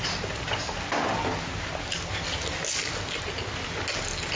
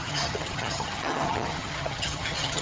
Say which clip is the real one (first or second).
first